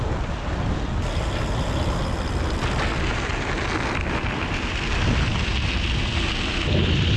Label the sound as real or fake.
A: real